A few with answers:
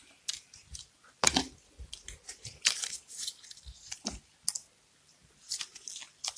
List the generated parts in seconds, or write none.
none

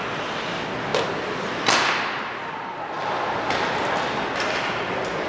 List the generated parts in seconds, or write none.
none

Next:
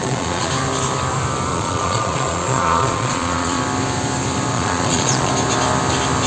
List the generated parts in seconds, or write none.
0.0-0.5 (vocoder, Vocos); 1.5-3.6; 4.5-5.3